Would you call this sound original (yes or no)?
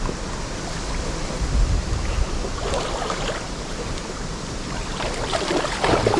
no